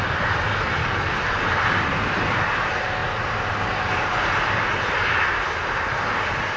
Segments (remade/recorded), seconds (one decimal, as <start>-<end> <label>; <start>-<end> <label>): 0.0-0.8 recorded; 0.8-1.4 remade; 1.4-6.6 recorded